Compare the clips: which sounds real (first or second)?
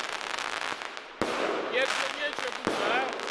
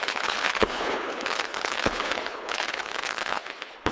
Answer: first